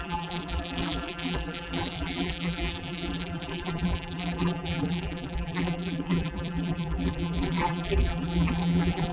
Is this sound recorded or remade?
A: remade